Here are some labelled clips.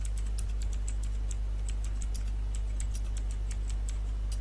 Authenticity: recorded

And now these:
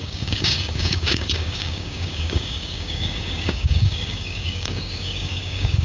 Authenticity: remade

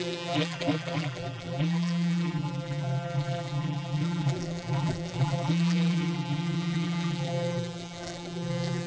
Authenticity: remade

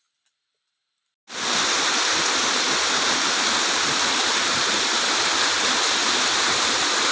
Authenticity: recorded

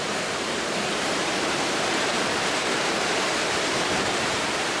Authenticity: remade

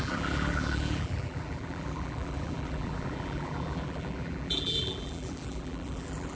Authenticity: remade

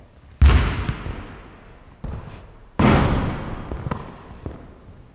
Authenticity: recorded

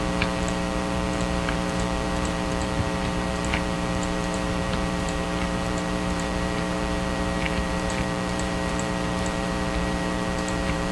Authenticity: remade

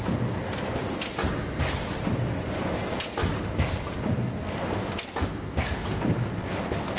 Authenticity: recorded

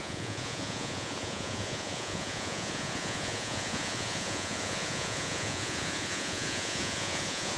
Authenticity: remade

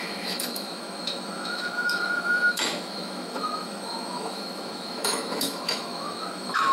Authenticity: remade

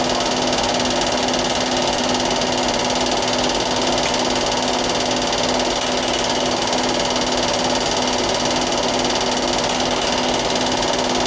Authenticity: recorded